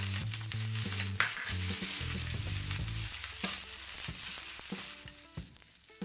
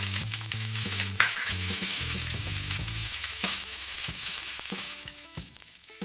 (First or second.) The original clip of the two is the first